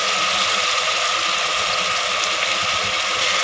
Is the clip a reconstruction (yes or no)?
no